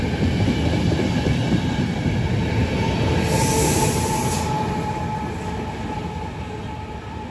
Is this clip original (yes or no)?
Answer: yes